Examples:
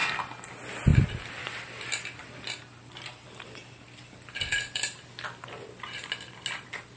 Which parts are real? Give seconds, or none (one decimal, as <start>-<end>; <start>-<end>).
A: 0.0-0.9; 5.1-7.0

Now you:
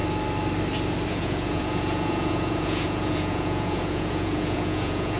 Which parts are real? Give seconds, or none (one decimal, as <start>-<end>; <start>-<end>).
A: 0.0-1.1

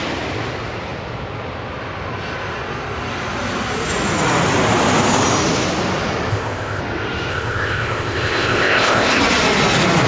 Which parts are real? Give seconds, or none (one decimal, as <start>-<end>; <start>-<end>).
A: 0.0-6.3; 6.8-7.3; 9.2-10.1

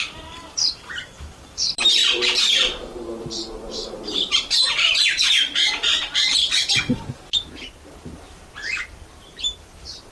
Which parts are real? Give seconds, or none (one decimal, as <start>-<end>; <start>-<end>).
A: none